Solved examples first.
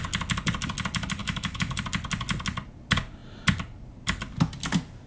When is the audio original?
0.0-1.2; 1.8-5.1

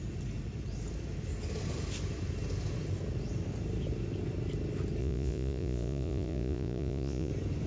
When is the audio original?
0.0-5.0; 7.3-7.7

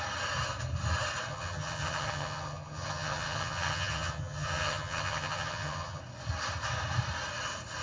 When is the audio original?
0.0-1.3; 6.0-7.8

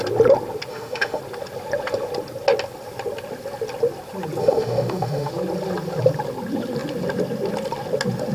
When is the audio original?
0.0-0.7; 1.2-4.4; 5.3-8.3

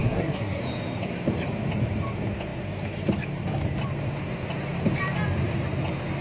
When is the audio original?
0.6-6.2